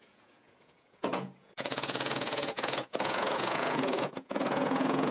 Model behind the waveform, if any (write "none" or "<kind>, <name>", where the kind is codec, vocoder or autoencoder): vocoder, Vocos